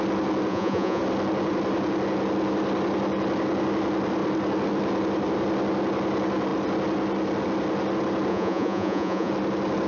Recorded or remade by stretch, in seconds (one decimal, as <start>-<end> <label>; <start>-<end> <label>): 0.0-0.5 recorded; 0.5-1.0 remade; 1.0-8.3 recorded; 8.3-9.3 remade; 9.3-9.9 recorded